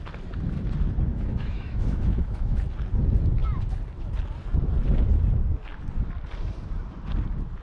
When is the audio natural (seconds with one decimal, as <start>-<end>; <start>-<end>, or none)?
0.0-1.1; 2.6-7.6